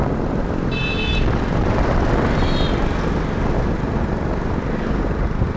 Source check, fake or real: real